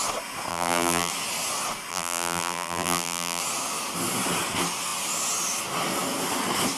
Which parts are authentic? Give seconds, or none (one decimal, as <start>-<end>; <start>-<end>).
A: 0.0-0.5; 1.1-1.9; 3.4-6.8